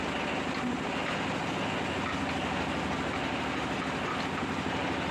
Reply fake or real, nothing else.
real